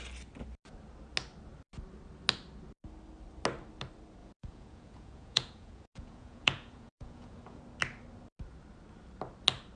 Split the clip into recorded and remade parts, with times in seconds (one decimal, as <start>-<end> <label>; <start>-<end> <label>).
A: 0.0-4.2 recorded; 4.2-7.6 remade; 7.6-9.8 recorded